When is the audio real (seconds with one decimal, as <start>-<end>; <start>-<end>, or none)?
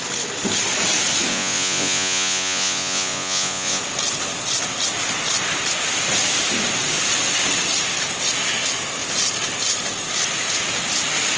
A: 0.0-1.3; 3.8-11.4